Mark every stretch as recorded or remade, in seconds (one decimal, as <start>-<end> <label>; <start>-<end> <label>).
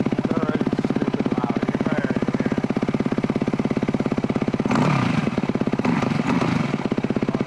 0.0-7.5 recorded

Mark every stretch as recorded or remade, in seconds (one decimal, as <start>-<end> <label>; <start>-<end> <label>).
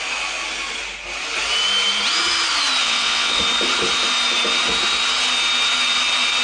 0.0-2.8 recorded; 2.8-3.4 remade; 3.4-6.4 recorded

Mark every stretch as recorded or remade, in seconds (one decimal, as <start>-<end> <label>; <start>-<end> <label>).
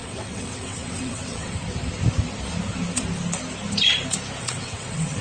0.0-1.6 remade; 1.6-4.4 recorded; 4.4-5.2 remade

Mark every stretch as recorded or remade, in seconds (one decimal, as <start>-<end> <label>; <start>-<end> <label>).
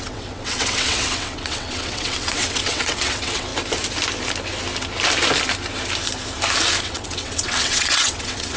0.0-3.5 remade; 3.5-6.8 recorded; 6.8-8.6 remade